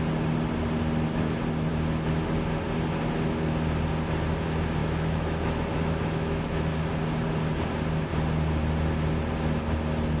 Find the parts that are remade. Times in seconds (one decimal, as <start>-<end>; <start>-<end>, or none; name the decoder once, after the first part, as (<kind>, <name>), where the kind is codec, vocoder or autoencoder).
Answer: 4.8-6.9 (autoencoder, DAC-VAE)